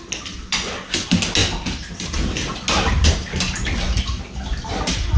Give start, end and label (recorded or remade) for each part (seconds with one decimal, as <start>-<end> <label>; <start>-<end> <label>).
0.0-5.2 recorded